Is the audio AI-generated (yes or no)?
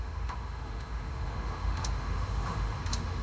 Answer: yes